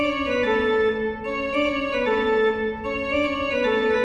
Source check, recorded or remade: recorded